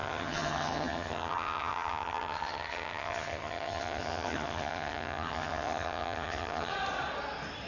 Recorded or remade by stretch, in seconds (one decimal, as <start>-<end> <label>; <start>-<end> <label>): 0.0-6.7 remade; 6.7-7.7 recorded